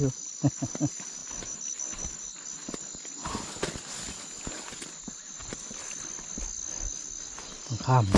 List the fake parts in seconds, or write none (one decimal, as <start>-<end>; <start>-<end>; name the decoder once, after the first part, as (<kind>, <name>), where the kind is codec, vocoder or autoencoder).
none